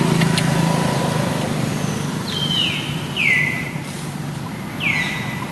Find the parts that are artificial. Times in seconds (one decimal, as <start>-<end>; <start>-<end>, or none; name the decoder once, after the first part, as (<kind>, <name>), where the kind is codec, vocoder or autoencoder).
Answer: none